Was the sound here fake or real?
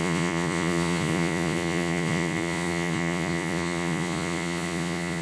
fake